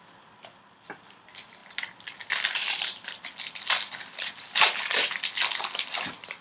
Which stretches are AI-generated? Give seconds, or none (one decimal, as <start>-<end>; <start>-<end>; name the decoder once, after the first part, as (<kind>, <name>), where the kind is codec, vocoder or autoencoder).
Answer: none